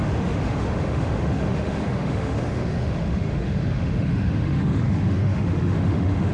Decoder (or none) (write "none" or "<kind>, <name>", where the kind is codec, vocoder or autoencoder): autoencoder, DAC-VAE